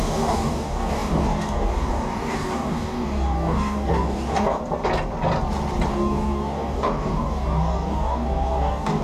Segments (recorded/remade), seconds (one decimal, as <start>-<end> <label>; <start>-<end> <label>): 0.0-4.6 remade; 4.6-5.9 recorded; 5.9-9.0 remade